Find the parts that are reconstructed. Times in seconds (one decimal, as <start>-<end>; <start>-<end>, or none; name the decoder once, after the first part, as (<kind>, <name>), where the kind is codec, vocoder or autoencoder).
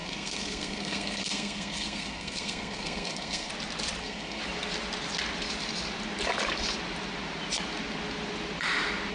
0.0-3.5 (codec, SNAC); 4.0-4.4